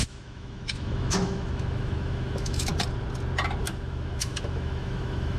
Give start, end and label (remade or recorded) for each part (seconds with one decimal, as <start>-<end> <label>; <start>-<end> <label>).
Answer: 0.0-2.7 remade; 2.7-3.6 recorded; 3.6-5.4 remade